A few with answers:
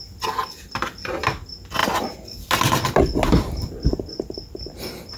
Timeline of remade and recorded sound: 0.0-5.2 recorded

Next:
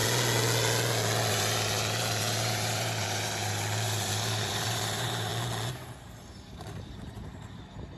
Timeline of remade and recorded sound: 0.0-1.3 recorded; 1.3-5.3 remade; 5.3-5.8 recorded; 5.8-8.0 remade

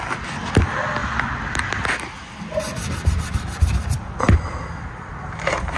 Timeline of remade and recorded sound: 0.0-2.2 recorded; 2.2-5.1 remade; 5.1-5.8 recorded

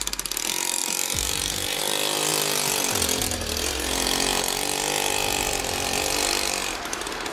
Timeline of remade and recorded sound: 0.0-0.8 recorded; 0.8-1.8 remade; 1.8-7.3 recorded

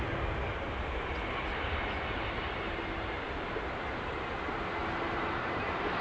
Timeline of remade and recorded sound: 0.0-0.5 recorded; 0.5-4.1 remade; 4.1-4.8 recorded; 4.8-6.0 remade